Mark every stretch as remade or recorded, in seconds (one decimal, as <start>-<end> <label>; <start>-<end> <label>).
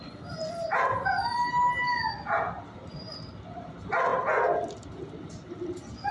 0.0-6.1 recorded